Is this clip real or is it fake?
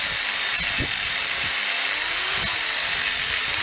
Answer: real